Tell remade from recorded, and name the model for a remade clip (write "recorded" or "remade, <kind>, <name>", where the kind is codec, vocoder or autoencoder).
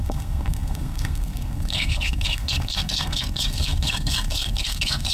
remade, codec, SNAC